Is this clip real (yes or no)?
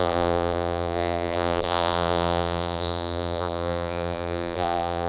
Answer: no